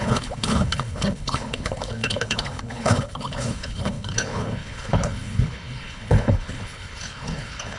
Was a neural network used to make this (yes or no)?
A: yes